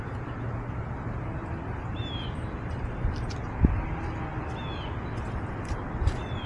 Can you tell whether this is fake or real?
real